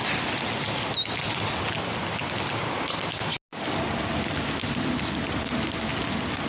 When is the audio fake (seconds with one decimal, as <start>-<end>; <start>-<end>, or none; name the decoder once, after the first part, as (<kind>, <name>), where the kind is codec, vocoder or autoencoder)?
none